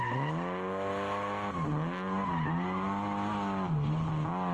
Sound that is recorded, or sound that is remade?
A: recorded